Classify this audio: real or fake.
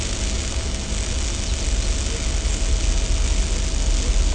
real